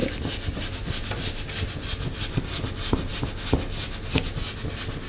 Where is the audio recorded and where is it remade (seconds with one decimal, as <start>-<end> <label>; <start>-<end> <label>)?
0.0-5.1 recorded